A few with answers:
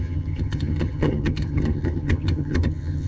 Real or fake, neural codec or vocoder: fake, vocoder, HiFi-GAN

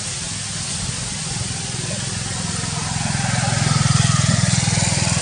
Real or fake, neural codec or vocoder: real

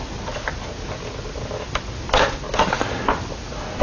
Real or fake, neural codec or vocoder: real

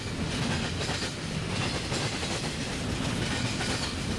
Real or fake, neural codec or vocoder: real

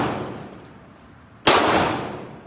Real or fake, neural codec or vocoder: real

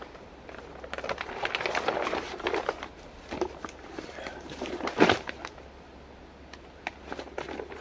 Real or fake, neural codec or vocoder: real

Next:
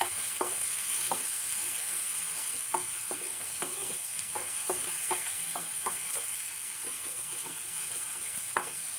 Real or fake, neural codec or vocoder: fake, codec, SNAC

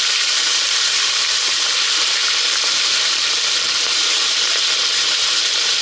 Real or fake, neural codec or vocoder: fake, vocoder, BigVGAN v2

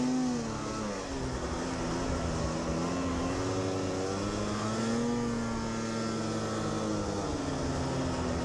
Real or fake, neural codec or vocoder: real